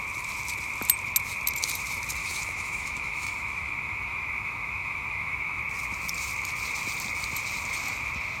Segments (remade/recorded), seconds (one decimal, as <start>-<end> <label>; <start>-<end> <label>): 0.0-2.2 recorded; 2.2-5.6 remade; 5.6-8.4 recorded